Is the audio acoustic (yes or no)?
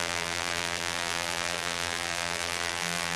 no